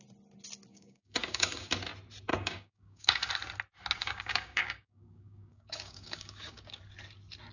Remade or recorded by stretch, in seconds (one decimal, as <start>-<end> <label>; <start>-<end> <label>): 0.0-0.7 recorded; 0.7-1.7 remade; 1.7-2.3 recorded; 2.3-3.3 remade; 3.3-4.0 recorded; 4.0-6.8 remade; 6.8-7.5 recorded